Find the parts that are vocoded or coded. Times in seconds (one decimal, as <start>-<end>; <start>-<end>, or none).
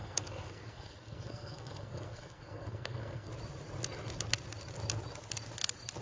0.0-3.3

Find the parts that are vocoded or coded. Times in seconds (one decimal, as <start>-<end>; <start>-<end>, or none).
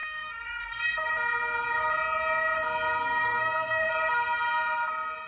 0.0-1.1; 3.2-3.9